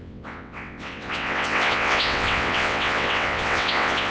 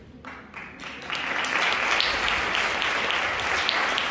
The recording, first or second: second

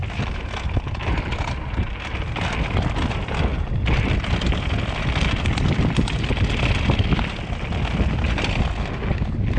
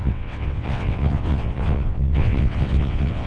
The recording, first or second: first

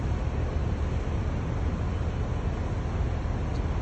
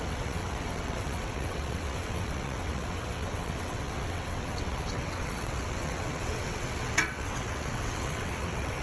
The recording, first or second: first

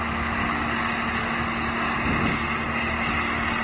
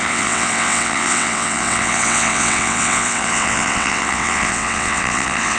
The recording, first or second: first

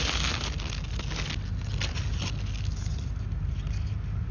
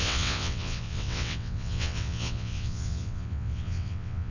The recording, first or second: first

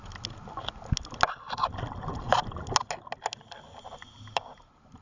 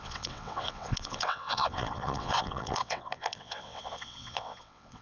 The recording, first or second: first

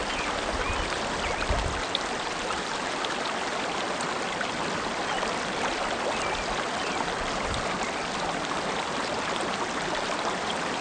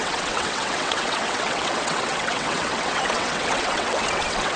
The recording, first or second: first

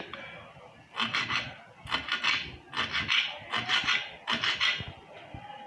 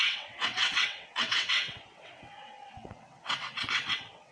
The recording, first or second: first